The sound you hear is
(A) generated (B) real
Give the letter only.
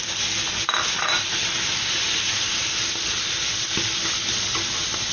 B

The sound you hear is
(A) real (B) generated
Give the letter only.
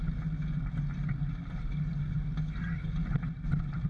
A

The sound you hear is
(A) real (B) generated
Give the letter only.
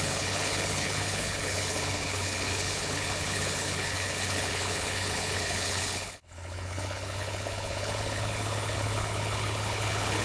B